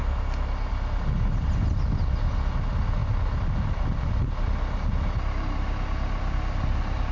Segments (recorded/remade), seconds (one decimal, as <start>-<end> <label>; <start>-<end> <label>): 0.0-7.1 recorded